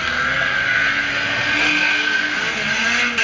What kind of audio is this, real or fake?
real